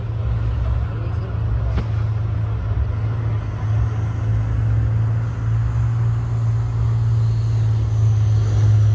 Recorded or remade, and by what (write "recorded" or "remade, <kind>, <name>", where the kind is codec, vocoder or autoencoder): recorded